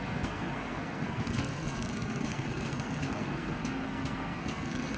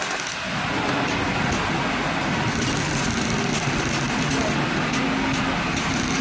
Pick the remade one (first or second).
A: first